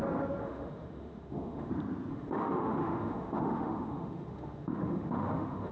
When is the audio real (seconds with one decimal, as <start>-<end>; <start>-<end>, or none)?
0.0-0.4; 1.7-2.1